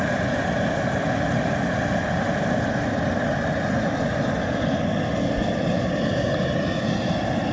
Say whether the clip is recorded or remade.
recorded